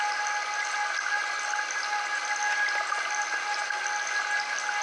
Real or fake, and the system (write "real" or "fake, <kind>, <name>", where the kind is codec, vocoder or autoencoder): real